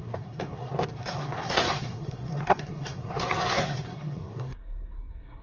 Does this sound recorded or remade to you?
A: remade